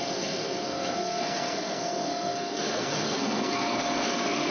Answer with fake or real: fake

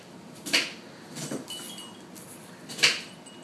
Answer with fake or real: real